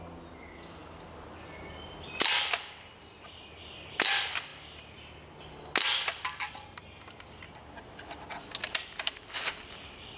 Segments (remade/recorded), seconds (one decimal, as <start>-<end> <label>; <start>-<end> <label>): 0.0-10.2 recorded